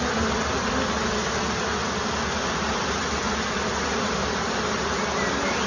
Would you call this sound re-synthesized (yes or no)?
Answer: no